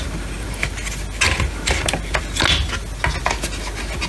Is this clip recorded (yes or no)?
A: yes